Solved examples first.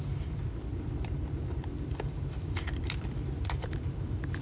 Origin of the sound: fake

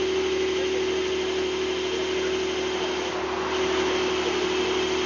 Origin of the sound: real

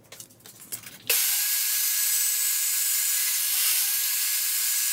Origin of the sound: real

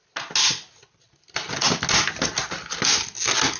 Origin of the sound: real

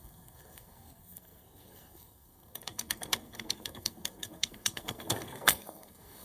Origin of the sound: fake